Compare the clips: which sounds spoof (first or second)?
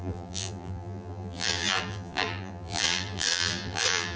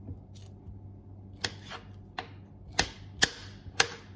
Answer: first